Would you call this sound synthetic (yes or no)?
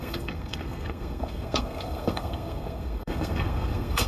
yes